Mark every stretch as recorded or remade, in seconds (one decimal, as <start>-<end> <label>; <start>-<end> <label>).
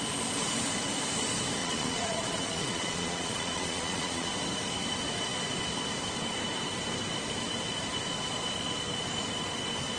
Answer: 0.0-1.6 recorded; 1.6-4.3 remade; 4.3-10.0 recorded